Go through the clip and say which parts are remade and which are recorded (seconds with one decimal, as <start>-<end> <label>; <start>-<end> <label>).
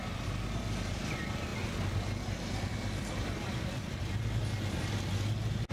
0.0-0.6 remade; 0.6-1.5 recorded; 1.5-4.4 remade; 4.4-5.7 recorded